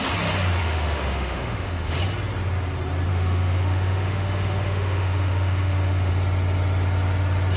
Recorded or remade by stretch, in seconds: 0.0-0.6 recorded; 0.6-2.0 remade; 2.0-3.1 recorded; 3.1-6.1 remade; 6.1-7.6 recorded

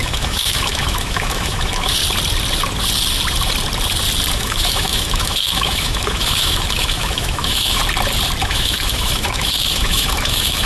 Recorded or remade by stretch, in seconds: 0.0-2.0 remade; 2.0-4.3 recorded; 4.3-7.8 remade; 7.8-8.4 recorded; 8.4-10.7 remade

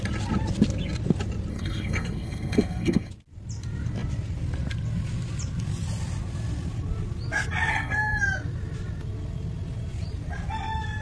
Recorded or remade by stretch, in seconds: 0.0-1.5 recorded; 1.5-3.1 remade; 3.1-7.7 recorded; 7.7-8.2 remade; 8.2-11.0 recorded

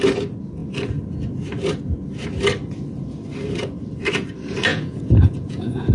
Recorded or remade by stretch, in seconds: 0.0-4.7 recorded; 4.7-5.9 remade

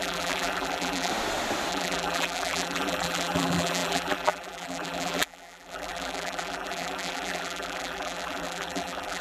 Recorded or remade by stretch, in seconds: 0.0-1.1 remade; 1.1-1.7 recorded; 1.7-9.2 remade

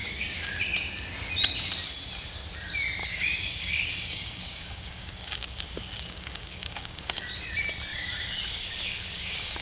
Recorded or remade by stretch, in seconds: 0.0-0.6 remade; 0.6-3.0 recorded; 3.0-7.2 remade; 7.2-7.9 recorded; 7.9-9.6 remade

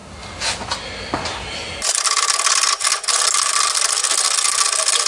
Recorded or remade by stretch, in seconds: 0.0-5.1 recorded

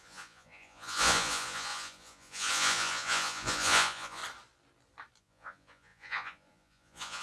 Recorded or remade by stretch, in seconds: 0.0-4.2 remade; 4.2-5.2 recorded; 5.2-7.2 remade